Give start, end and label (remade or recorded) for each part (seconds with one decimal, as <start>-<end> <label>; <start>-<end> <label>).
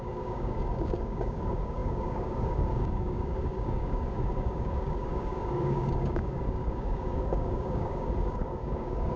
0.0-9.2 remade